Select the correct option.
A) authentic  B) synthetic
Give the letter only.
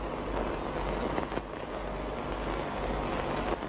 A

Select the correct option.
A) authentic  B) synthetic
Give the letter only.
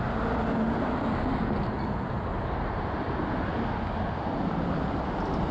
A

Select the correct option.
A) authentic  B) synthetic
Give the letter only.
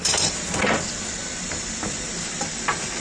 A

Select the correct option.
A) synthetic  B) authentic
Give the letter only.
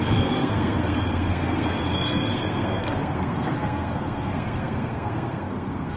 A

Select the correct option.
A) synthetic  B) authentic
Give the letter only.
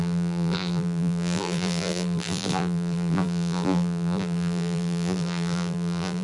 A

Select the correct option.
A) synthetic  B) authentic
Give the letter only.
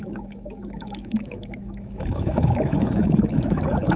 A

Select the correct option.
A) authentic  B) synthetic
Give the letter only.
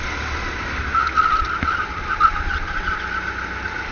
A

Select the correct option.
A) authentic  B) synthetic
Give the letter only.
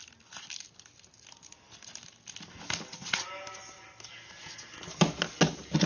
A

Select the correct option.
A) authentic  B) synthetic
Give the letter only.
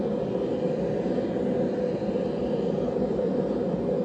A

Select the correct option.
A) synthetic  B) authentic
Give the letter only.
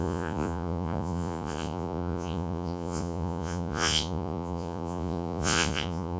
A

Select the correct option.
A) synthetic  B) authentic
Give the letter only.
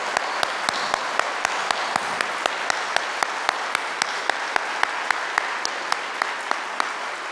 B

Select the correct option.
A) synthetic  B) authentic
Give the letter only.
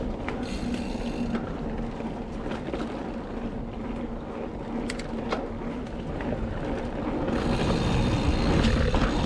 B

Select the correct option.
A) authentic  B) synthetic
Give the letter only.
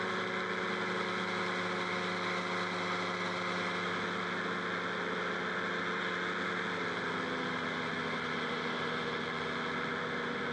A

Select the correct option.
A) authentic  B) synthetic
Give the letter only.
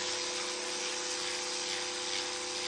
A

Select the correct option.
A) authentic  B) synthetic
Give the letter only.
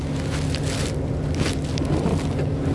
A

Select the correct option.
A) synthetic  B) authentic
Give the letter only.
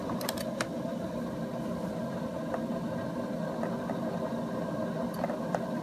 B